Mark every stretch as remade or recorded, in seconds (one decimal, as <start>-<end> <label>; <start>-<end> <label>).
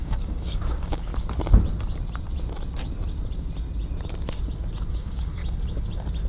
0.0-1.1 remade; 1.1-4.9 recorded; 4.9-5.4 remade; 5.4-6.3 recorded